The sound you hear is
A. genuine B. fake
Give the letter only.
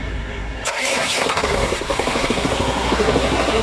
B